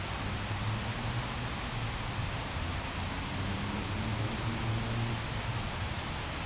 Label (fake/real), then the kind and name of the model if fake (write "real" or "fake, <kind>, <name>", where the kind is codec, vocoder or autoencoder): real